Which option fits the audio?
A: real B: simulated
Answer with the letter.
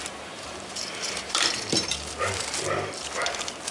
B